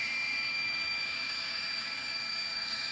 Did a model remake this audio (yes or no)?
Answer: yes